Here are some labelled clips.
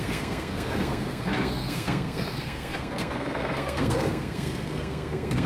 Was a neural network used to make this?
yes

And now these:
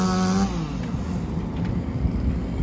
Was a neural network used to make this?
no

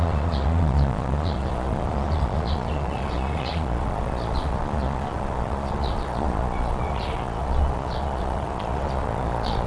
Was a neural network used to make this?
yes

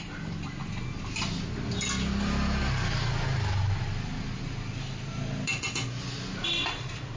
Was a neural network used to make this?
no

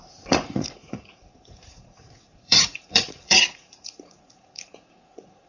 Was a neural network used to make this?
yes